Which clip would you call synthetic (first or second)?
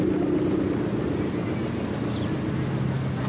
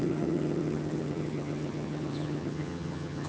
second